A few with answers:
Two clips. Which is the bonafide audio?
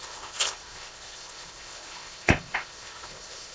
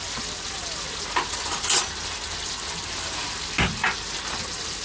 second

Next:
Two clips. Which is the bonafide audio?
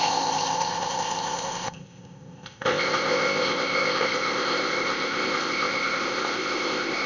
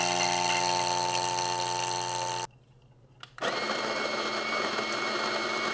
second